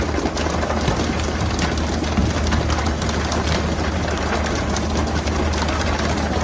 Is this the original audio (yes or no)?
yes